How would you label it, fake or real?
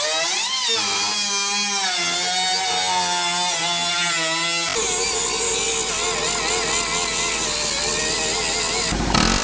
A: real